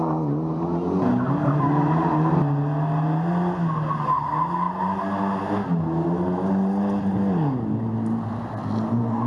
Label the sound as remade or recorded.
recorded